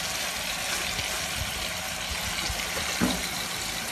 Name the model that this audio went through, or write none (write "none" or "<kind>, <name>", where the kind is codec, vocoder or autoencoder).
none